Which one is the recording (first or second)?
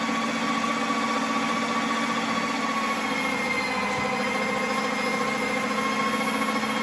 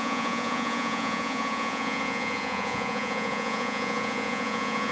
first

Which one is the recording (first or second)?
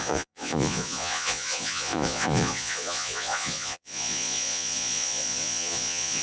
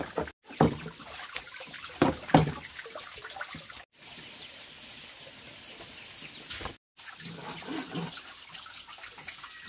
second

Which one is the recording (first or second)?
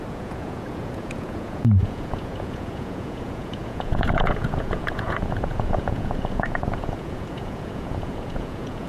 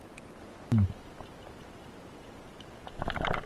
second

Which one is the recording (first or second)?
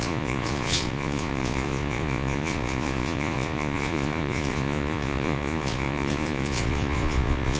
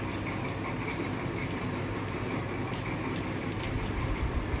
second